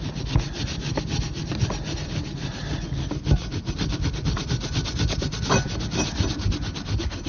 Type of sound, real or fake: real